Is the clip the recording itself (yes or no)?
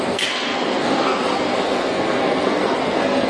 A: no